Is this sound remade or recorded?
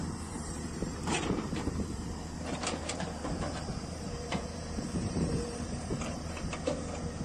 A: remade